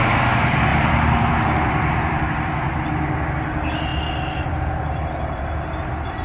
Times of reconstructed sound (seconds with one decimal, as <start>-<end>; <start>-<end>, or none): 0.7-2.9; 3.9-4.6